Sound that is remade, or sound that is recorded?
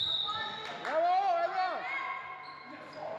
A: recorded